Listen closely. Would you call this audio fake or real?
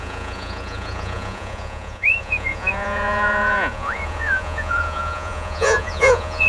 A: fake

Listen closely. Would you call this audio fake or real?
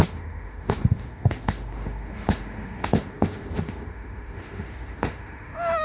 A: fake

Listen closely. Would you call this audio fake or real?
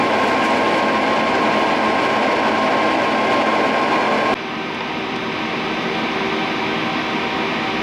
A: real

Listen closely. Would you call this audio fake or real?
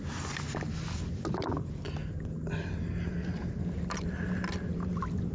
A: real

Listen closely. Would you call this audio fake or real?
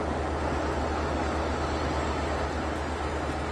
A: real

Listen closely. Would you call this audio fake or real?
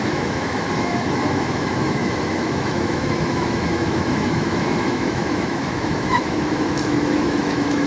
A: fake